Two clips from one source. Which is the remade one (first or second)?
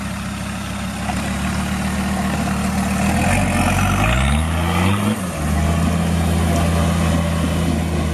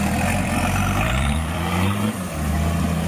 second